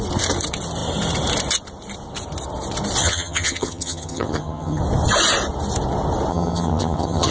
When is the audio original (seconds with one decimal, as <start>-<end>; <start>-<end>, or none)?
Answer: 0.0-3.0; 4.8-6.3